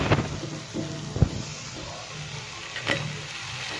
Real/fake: real